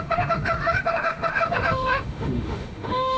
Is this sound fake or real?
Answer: fake